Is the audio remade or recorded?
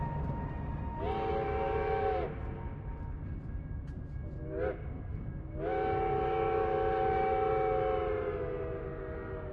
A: recorded